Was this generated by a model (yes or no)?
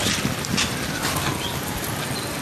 no